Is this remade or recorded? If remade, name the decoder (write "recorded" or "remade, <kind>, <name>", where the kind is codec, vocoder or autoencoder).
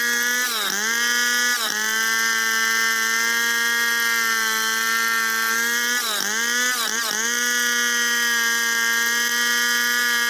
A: recorded